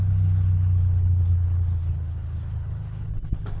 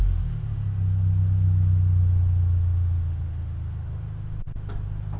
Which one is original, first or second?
second